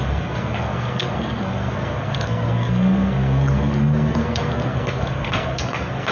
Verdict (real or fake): fake